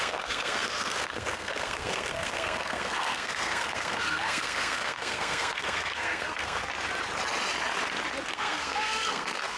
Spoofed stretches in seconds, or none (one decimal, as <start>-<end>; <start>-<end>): 0.0-6.6; 8.3-9.6